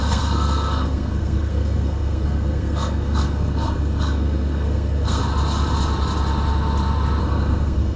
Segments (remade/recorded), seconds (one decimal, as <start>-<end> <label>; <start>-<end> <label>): 0.0-5.2 remade; 5.2-7.2 recorded; 7.2-8.0 remade

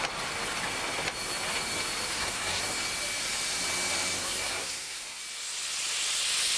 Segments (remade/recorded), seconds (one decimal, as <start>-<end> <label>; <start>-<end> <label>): 0.0-2.1 recorded; 2.1-2.6 remade; 2.6-4.2 recorded; 4.2-5.2 remade; 5.2-6.6 recorded

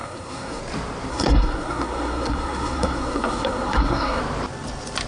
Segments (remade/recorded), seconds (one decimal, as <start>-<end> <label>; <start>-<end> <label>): 0.0-0.6 remade; 0.6-1.1 recorded; 1.1-4.2 remade; 4.2-5.1 recorded

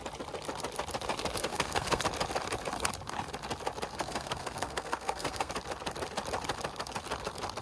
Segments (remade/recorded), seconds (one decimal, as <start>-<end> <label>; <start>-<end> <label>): 0.0-1.4 recorded; 1.4-2.0 remade; 2.0-3.9 recorded; 3.9-5.5 remade; 5.5-7.6 recorded

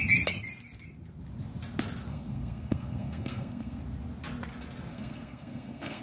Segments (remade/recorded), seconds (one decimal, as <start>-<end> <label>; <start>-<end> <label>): 0.0-2.1 recorded; 2.1-3.8 remade; 3.8-4.9 recorded; 4.9-6.0 remade

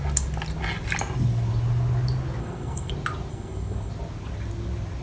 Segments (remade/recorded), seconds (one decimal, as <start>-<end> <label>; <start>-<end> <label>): 0.0-2.4 recorded; 2.4-2.9 remade; 2.9-3.3 recorded; 3.3-3.9 remade; 3.9-5.0 recorded

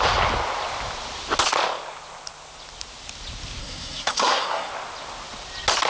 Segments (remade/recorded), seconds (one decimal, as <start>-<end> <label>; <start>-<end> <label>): 0.0-3.6 recorded; 3.6-4.7 remade; 4.7-5.9 recorded